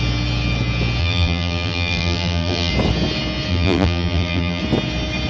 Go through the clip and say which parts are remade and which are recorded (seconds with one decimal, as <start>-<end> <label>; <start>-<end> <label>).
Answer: 0.0-1.0 recorded; 1.0-2.7 remade; 2.7-3.5 recorded; 3.5-4.6 remade; 4.6-5.3 recorded